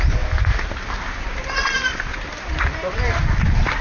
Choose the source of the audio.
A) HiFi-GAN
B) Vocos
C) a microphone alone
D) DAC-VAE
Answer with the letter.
C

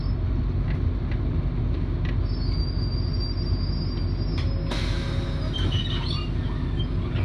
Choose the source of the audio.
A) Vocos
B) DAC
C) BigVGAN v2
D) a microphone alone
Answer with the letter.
D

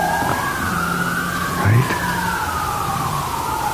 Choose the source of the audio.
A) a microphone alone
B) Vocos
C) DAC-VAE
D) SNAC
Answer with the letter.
A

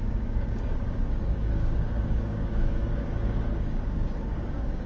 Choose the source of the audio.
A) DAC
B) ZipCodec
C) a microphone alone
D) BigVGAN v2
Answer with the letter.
A